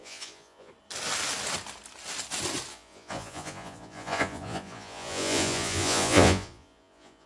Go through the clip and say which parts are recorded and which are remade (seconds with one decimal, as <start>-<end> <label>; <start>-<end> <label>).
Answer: 0.0-0.7 remade; 0.7-2.7 recorded; 2.7-7.3 remade